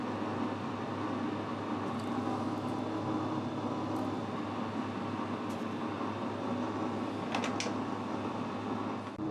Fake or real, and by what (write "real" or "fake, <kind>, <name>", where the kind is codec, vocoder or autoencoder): real